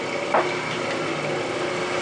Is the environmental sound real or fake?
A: real